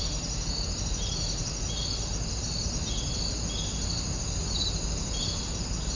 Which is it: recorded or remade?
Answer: recorded